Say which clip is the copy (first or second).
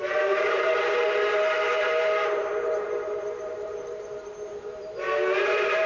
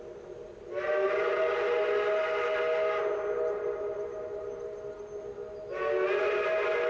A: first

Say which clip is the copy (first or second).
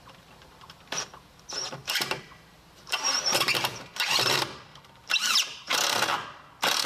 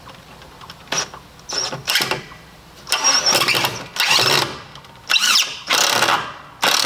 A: first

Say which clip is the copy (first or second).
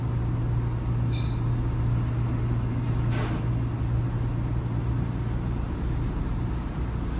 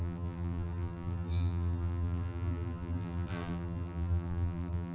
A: second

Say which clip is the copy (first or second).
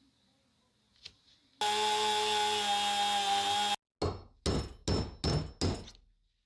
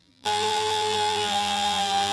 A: second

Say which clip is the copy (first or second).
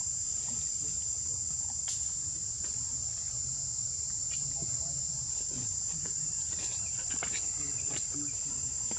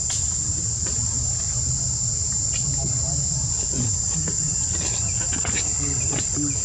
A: first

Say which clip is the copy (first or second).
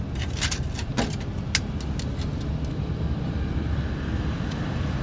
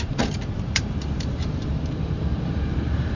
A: second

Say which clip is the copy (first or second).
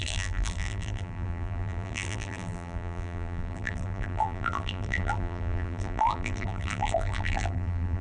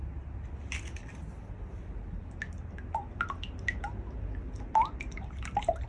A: first